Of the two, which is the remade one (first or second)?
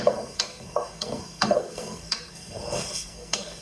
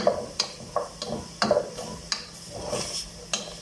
first